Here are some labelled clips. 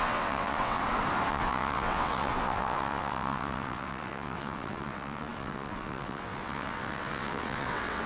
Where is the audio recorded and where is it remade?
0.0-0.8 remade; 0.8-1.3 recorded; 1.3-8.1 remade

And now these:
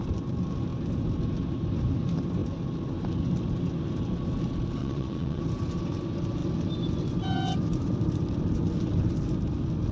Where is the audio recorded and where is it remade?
0.0-4.8 recorded; 4.8-5.4 remade; 5.4-9.9 recorded

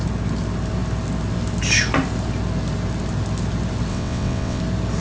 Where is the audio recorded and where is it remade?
0.0-3.9 recorded; 3.9-4.6 remade; 4.6-5.0 recorded

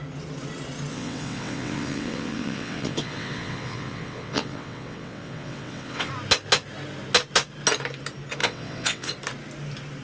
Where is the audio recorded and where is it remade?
0.0-0.9 recorded; 0.9-6.1 remade; 6.1-8.4 recorded; 8.4-9.1 remade; 9.1-10.0 recorded

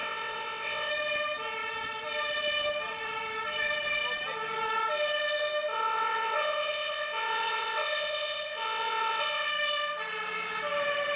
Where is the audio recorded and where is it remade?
0.0-0.9 remade; 0.9-5.7 recorded; 5.7-9.5 remade; 9.5-11.2 recorded

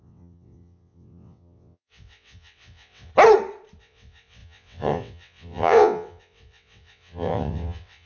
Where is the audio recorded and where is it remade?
0.0-3.1 remade; 3.1-3.8 recorded; 3.8-8.1 remade

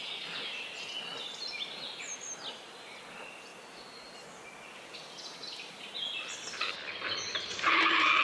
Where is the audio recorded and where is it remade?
0.0-8.2 recorded

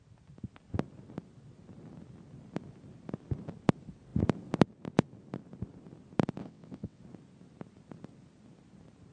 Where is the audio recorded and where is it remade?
0.0-6.4 recorded; 6.4-7.0 remade; 7.0-9.1 recorded